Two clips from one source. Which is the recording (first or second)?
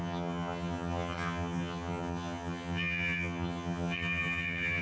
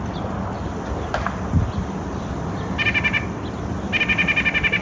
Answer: second